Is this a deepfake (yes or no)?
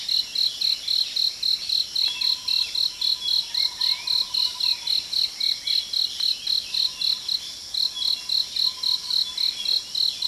no